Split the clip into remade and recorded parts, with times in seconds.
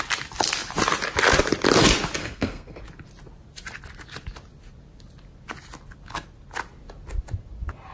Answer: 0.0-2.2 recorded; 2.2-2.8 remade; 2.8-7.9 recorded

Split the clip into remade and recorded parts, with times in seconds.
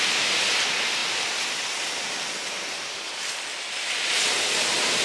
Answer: 0.0-5.0 recorded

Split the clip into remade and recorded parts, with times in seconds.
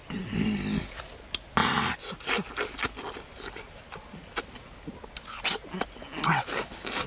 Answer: 0.0-7.1 recorded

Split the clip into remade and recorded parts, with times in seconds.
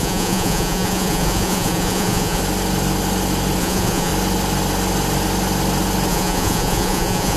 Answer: 0.0-2.4 remade; 2.4-3.6 recorded; 3.6-4.1 remade; 4.1-6.1 recorded; 6.1-7.4 remade